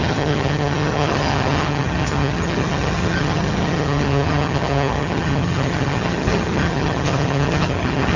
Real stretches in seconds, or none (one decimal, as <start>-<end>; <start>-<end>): none